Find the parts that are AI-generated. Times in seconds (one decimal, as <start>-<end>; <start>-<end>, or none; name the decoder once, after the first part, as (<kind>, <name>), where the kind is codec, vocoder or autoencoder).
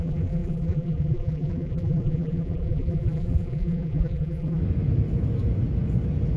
0.0-4.6 (vocoder, BigVGAN v2)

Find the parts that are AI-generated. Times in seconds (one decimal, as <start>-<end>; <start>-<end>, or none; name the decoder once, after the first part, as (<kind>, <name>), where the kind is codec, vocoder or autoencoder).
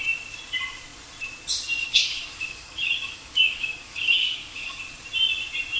1.8-4.8 (codec, DAC)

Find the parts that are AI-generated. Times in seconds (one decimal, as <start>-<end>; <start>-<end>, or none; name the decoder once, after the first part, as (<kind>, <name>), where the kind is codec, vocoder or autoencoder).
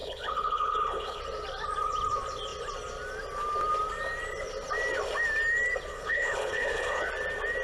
0.0-1.2 (codec, HILCodec); 5.9-7.1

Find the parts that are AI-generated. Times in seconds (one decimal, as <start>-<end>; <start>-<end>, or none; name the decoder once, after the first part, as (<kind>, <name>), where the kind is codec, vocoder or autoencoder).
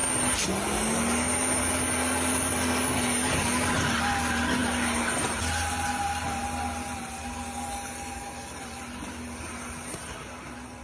none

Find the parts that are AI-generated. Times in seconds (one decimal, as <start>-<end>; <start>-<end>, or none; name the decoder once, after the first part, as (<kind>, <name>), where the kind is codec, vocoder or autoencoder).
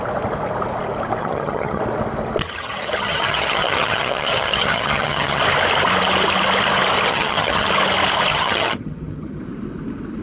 1.2-1.8 (vocoder, HiFi-GAN); 2.4-5.4; 7.1-7.7; 8.3-9.4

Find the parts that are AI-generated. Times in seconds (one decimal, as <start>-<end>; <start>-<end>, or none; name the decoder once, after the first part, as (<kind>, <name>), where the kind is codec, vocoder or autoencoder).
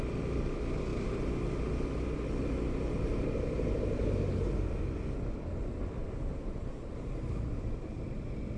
0.9-1.7 (vocoder, BigVGAN v2); 6.0-7.5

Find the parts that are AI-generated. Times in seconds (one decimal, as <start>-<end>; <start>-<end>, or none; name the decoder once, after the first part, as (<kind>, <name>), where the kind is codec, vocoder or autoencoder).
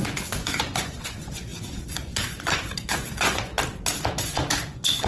0.0-3.5 (vocoder, Vocos); 4.1-5.1